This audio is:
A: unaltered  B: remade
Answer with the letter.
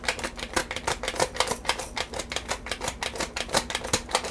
A